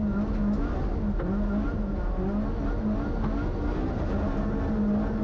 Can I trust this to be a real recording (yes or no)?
yes